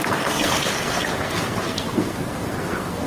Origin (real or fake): fake